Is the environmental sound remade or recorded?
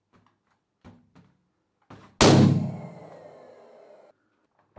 recorded